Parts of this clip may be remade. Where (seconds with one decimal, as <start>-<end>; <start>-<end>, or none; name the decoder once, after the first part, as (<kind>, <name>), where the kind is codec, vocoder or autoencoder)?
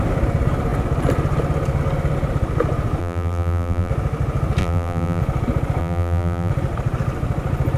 3.0-3.9 (vocoder, BigVGAN v2); 4.6-5.2; 5.8-6.5